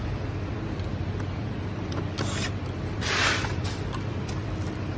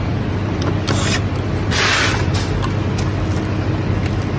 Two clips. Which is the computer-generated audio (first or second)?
first